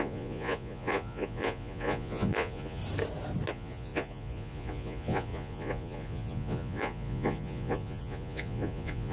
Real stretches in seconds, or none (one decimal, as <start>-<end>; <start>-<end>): 2.8-3.5